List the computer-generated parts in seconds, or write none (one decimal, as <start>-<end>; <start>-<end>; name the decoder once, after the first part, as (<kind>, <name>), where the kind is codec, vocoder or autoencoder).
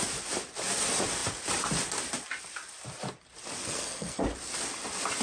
3.6-4.2 (codec, SNAC)